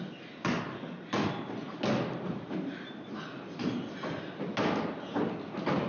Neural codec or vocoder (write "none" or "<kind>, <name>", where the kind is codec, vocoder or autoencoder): none